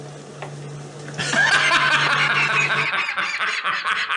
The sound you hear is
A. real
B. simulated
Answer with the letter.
A